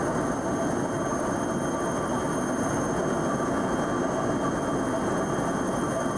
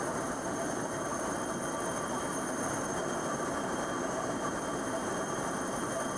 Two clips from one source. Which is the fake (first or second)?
second